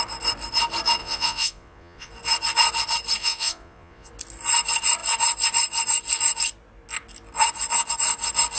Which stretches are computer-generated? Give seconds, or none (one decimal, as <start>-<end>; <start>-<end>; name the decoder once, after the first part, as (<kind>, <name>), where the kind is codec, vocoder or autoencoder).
1.0-2.1 (vocoder, Vocos); 3.2-4.1